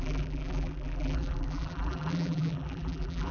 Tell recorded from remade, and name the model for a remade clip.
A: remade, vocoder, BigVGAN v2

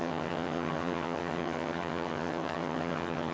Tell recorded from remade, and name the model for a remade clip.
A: remade, vocoder, HiFi-GAN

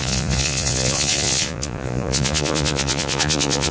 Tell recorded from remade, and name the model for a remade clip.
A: remade, vocoder, Vocos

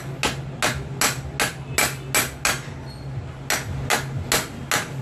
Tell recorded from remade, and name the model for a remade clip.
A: recorded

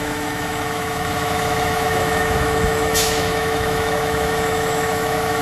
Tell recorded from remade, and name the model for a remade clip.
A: remade, autoencoder, DAC-VAE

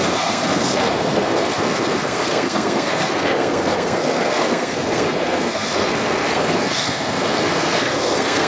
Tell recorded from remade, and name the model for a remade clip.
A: remade, codec, SNAC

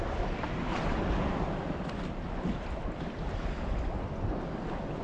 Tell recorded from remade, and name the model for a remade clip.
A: recorded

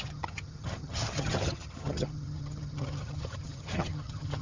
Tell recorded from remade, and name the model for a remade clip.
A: remade, vocoder, HiFi-GAN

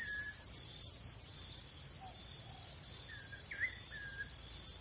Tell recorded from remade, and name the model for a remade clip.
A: recorded